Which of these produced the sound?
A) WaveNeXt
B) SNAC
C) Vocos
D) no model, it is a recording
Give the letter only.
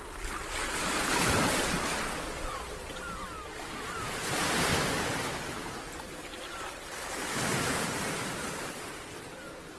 D